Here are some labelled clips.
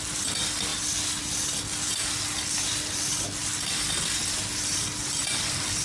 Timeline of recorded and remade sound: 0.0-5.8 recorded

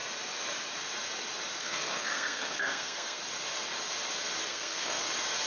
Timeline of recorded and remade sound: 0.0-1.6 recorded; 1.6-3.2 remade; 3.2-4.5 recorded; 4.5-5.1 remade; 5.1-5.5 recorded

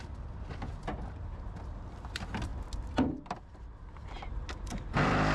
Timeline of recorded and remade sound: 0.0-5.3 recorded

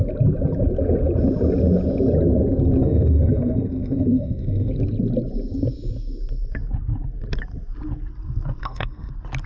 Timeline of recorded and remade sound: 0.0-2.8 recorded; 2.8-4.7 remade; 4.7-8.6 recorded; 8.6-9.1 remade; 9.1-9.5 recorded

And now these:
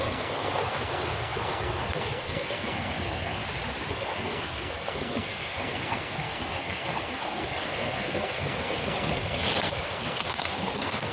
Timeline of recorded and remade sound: 0.0-3.4 remade; 3.4-3.9 recorded; 3.9-11.1 remade

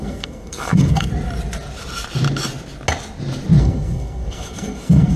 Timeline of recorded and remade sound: 0.0-1.1 remade; 1.1-3.6 recorded; 3.6-5.2 remade

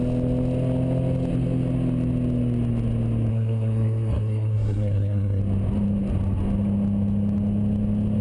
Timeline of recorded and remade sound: 0.0-3.3 recorded; 3.3-5.4 remade; 5.4-8.2 recorded